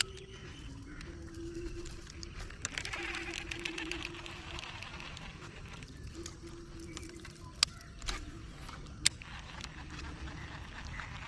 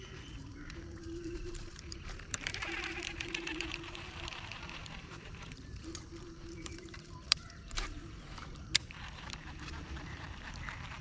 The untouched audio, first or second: first